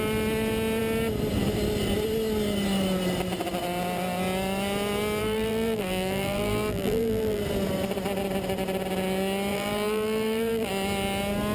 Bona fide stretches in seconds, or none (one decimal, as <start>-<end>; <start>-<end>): 0.0-5.2; 7.4-9.5; 10.7-11.5